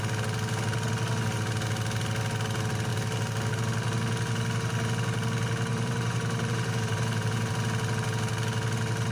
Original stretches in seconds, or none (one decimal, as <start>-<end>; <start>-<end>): 0.0-5.7; 7.5-9.1